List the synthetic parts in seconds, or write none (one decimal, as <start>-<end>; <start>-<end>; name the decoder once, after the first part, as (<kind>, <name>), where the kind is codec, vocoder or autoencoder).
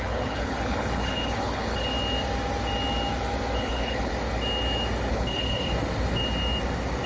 0.0-1.9 (codec, HILCodec); 3.6-4.1; 5.1-5.7